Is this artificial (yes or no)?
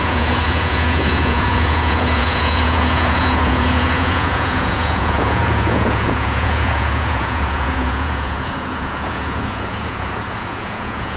yes